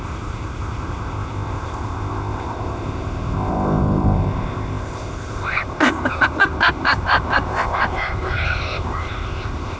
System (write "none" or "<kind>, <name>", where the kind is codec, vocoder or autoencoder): codec, ZipCodec